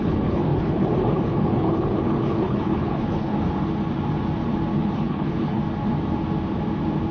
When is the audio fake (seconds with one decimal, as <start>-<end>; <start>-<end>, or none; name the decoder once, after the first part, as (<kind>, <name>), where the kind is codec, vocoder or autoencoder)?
0.0-3.3 (codec, HILCodec); 4.8-5.6